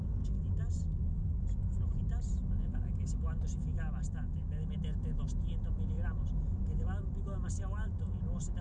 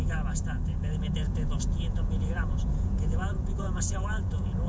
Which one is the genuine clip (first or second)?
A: first